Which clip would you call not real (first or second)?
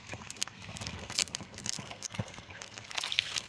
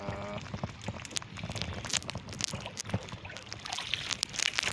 first